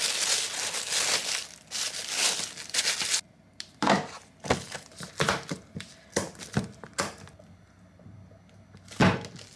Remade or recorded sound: recorded